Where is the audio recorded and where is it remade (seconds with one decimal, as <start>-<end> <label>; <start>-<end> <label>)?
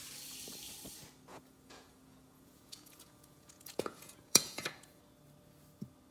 0.0-1.3 recorded; 1.3-5.0 remade; 5.0-6.1 recorded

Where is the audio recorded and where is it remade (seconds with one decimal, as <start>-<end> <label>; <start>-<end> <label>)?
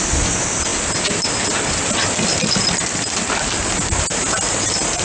0.0-5.0 recorded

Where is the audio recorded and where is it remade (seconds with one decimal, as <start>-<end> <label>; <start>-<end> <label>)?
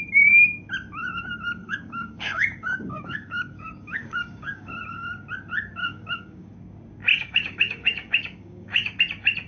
0.0-1.6 recorded; 1.6-4.7 remade; 4.7-5.8 recorded; 5.8-6.5 remade; 6.5-7.1 recorded; 7.1-9.0 remade; 9.0-9.5 recorded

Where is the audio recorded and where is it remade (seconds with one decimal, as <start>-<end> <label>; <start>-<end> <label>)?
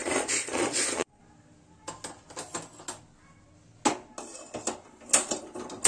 0.0-1.2 remade; 1.2-5.9 recorded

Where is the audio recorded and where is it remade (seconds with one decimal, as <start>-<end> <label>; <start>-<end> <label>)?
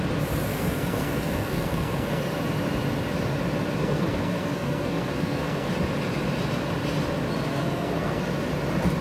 0.0-0.5 recorded; 0.5-2.2 remade; 2.2-3.8 recorded; 3.8-5.7 remade; 5.7-7.5 recorded; 7.5-8.2 remade; 8.2-9.0 recorded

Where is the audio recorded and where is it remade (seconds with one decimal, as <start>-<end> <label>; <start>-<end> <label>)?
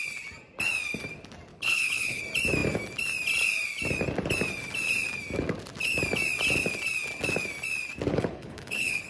0.0-1.5 recorded; 1.5-2.2 remade; 2.2-8.1 recorded; 8.1-9.1 remade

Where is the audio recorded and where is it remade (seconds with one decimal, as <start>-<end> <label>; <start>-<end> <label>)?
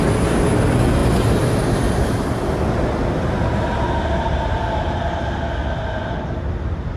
0.0-7.0 recorded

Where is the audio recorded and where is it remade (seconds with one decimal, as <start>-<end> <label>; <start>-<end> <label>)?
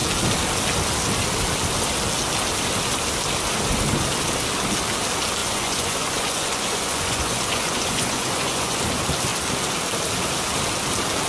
0.0-5.4 recorded; 5.4-8.8 remade; 8.8-11.3 recorded